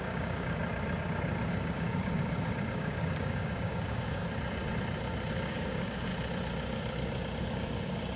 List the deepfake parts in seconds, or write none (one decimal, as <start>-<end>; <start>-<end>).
0.0-0.6; 1.5-4.2; 5.3-6.1; 7.4-8.2